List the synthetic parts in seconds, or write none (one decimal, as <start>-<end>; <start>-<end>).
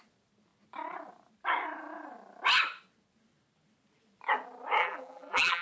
4.8-5.6